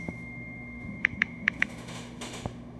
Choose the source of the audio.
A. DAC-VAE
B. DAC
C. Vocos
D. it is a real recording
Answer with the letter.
A